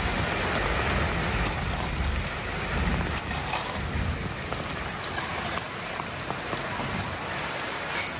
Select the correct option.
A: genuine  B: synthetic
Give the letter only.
A